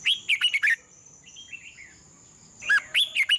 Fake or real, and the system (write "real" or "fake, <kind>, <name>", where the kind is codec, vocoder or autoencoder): real